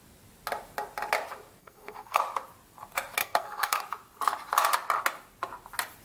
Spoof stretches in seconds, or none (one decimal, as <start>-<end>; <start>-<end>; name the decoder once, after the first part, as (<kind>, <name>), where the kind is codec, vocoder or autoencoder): 1.6-2.2 (codec, SNAC); 3.2-3.8